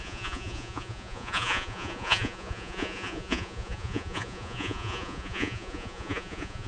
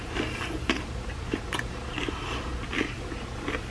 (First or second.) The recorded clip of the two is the second